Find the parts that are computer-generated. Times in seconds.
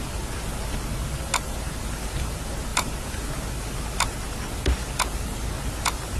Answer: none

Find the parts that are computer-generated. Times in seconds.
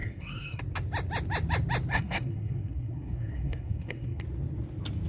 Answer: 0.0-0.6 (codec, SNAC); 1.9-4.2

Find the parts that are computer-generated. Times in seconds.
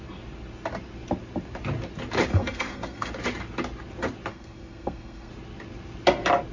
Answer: 2.3-3.1 (codec, SNAC); 4.3-5.3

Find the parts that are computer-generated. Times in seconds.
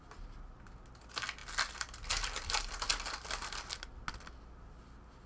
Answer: none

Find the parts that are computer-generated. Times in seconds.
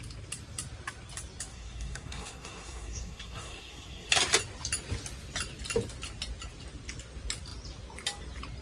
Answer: 1.5-4.1 (codec, SNAC)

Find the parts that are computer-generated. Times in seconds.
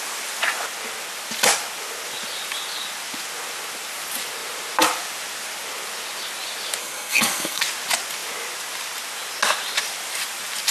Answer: 6.8-7.6 (codec, SNAC)